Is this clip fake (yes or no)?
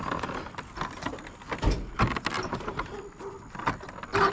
no